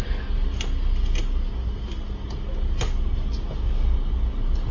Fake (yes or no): no